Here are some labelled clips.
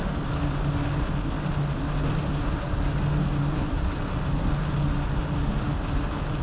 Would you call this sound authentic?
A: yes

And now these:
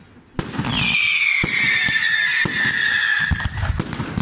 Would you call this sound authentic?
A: yes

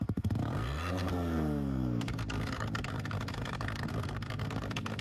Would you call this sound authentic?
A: no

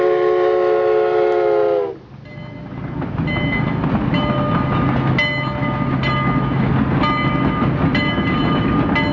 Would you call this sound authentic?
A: yes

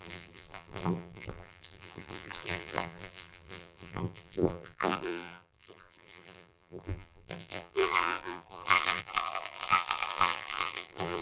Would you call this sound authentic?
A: no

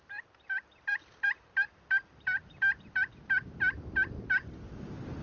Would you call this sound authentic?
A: yes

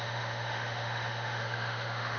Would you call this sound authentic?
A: no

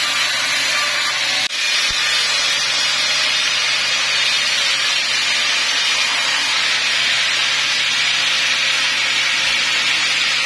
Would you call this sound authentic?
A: yes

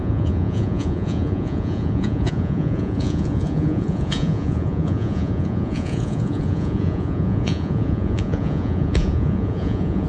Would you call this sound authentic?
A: no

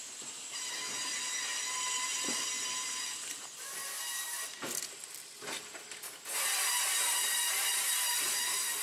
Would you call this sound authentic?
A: yes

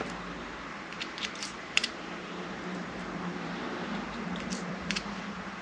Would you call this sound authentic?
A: no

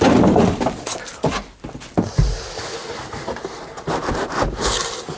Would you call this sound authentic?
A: yes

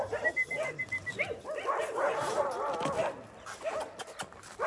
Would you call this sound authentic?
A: yes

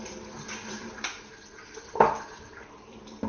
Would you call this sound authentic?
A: yes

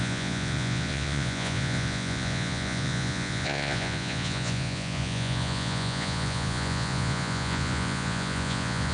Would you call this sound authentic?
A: no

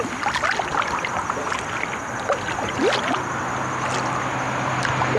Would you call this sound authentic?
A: yes